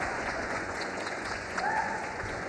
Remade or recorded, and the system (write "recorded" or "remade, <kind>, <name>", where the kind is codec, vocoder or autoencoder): remade, vocoder, Vocos